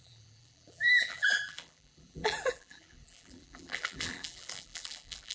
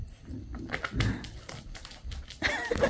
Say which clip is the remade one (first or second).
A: first